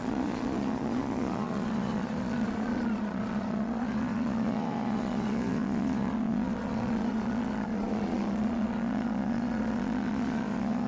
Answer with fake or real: fake